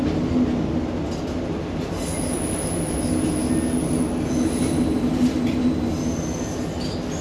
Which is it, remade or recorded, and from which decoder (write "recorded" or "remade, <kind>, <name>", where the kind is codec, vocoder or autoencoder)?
recorded